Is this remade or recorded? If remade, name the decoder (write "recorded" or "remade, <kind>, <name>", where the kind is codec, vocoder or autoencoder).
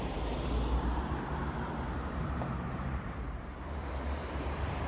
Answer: remade, vocoder, BigVGAN v2